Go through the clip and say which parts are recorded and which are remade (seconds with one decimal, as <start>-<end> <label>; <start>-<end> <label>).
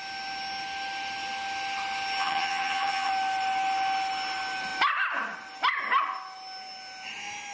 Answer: 0.0-2.2 recorded; 2.2-3.1 remade; 3.1-7.5 recorded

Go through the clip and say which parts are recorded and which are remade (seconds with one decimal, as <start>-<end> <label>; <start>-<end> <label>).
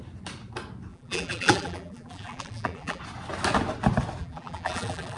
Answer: 0.0-0.9 recorded; 0.9-3.0 remade; 3.0-4.2 recorded; 4.2-5.2 remade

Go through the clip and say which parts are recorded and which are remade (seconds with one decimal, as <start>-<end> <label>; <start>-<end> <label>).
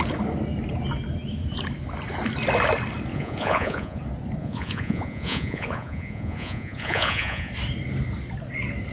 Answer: 0.0-3.1 recorded; 3.1-4.0 remade; 4.0-4.4 recorded; 4.4-7.5 remade; 7.5-8.9 recorded